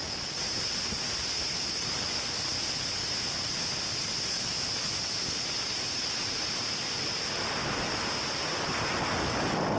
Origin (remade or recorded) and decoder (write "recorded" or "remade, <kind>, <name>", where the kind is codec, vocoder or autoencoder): recorded